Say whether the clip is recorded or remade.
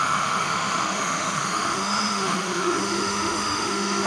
remade